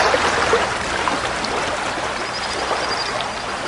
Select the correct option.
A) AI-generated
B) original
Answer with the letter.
B